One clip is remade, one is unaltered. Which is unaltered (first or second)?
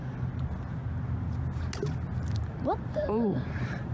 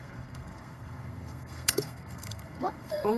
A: first